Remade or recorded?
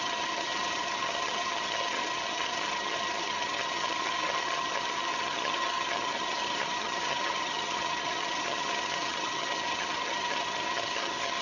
remade